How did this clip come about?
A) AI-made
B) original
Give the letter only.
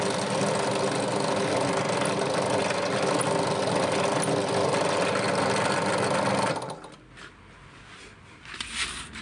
B